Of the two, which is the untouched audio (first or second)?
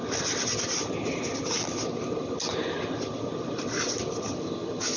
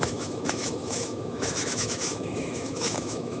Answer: first